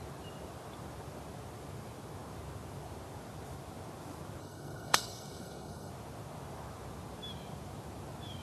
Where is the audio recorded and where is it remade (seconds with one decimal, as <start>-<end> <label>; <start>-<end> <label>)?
0.0-4.4 recorded; 4.4-5.9 remade; 5.9-8.4 recorded